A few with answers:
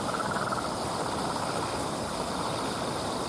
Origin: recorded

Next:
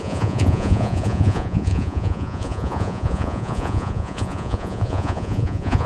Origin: remade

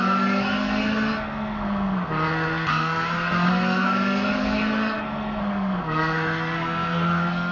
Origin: remade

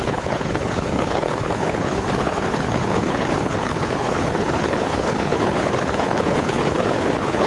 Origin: remade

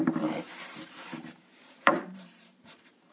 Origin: remade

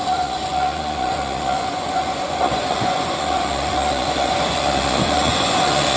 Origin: remade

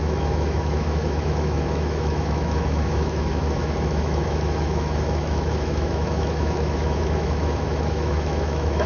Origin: remade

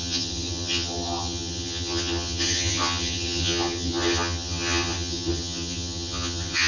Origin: remade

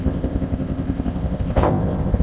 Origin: remade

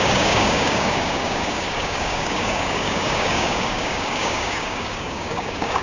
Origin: remade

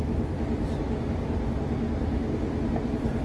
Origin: recorded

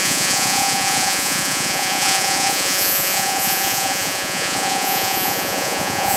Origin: remade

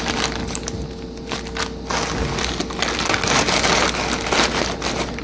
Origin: recorded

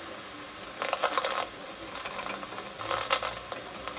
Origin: recorded